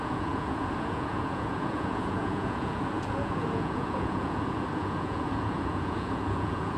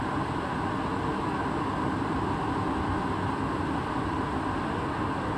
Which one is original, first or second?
second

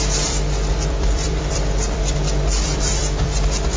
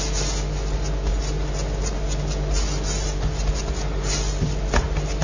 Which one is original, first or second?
second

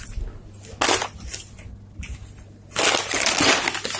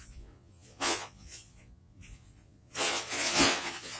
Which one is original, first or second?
first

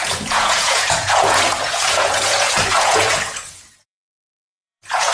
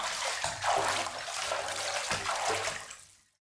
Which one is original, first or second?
second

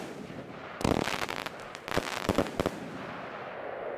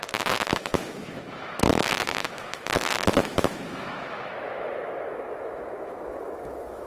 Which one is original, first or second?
first